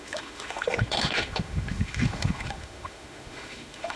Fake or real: fake